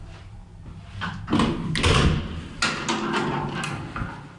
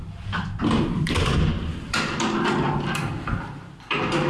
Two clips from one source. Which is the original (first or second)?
first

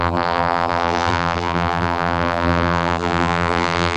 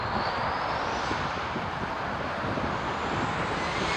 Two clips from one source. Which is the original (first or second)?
second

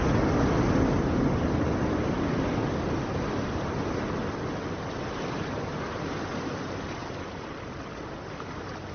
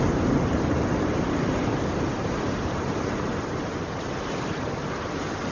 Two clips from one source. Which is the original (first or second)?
first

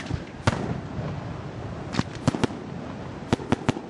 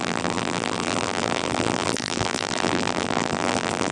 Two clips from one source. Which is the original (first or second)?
first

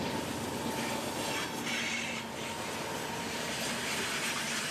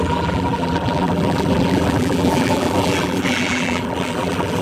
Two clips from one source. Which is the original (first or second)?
first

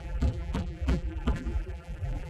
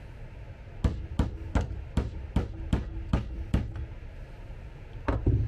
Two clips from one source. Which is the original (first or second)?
second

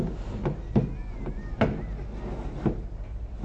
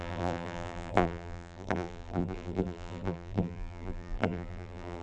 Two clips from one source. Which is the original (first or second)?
first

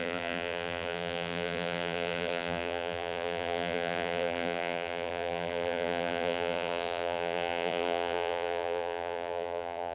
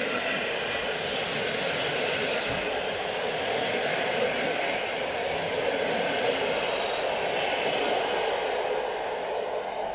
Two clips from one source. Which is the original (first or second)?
second